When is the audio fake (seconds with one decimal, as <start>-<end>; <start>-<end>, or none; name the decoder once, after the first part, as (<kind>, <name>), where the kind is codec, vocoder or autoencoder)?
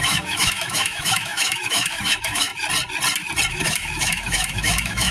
0.0-2.5 (autoencoder, DAC-VAE); 3.5-5.1